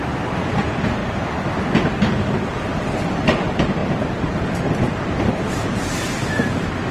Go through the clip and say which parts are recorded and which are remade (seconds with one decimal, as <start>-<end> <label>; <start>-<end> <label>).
0.0-1.0 remade; 1.0-2.5 recorded; 2.5-6.9 remade